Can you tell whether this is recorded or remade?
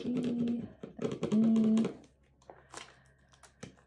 recorded